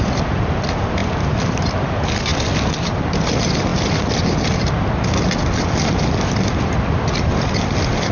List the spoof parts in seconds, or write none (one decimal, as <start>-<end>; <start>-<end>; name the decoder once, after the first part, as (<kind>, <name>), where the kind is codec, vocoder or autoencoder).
1.0-1.9 (vocoder, BigVGAN v2)

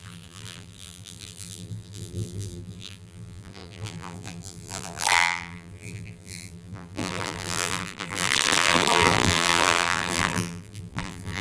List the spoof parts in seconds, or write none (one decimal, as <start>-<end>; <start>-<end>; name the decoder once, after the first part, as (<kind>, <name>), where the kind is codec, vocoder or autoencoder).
0.0-11.4 (vocoder, BigVGAN v2)

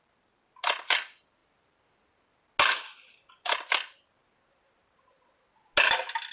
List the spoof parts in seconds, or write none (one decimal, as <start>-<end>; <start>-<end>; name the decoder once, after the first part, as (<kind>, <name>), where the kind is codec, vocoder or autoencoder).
none

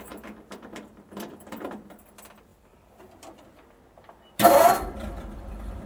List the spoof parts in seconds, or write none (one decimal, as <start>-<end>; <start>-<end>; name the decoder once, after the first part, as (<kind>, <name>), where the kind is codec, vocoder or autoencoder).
0.0-5.9 (vocoder, BigVGAN v2)

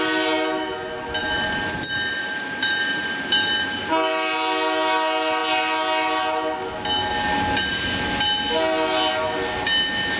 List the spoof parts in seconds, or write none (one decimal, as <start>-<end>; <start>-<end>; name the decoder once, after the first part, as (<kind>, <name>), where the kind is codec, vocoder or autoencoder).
1.2-1.8 (vocoder, BigVGAN v2); 2.2-3.8

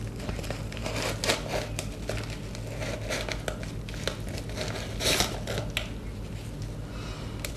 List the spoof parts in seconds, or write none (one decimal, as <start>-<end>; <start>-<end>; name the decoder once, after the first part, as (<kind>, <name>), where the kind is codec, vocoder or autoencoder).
none

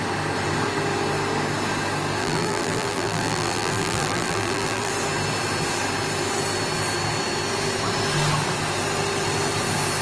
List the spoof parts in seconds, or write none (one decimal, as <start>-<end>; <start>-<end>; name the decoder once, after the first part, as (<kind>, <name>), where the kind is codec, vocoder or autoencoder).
2.2-4.9 (vocoder, BigVGAN v2)

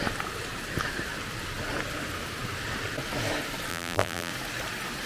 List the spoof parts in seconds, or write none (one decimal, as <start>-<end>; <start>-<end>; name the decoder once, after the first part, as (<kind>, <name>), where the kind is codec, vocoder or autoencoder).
3.7-4.3 (vocoder, BigVGAN v2)